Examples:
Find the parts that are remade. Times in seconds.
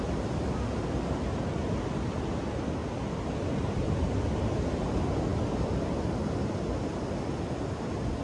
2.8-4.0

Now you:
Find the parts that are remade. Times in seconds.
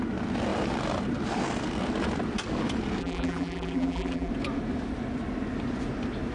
3.0-4.3